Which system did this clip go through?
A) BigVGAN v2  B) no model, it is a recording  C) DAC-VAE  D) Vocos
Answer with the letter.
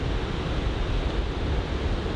B